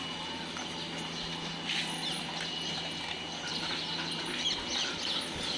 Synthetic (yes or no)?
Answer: no